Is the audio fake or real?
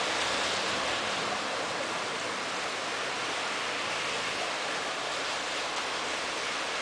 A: real